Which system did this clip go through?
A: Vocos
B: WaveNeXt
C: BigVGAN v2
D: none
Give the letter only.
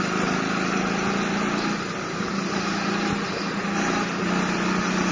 D